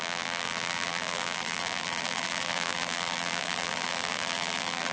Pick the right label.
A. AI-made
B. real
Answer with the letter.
A